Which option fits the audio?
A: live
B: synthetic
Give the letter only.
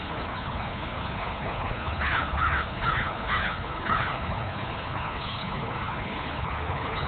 B